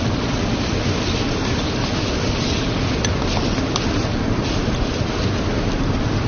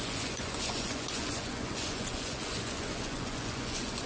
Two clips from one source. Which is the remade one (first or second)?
second